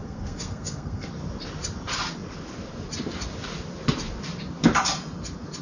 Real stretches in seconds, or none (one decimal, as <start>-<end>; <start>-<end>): 1.1-5.6